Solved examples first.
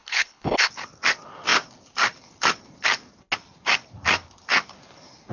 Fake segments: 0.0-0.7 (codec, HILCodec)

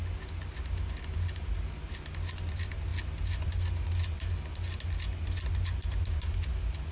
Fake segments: none

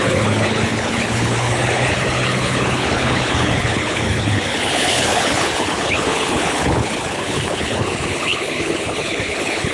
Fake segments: 0.0-9.7 (codec, HILCodec)

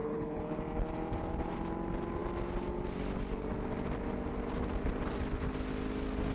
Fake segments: 0.0-0.6 (codec, HILCodec)

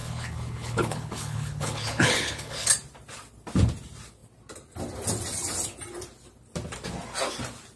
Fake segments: 0.0-2.7 (codec, HILCodec)

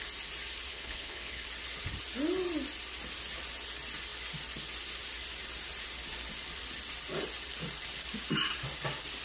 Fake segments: 0.7-1.5 (codec, HILCodec)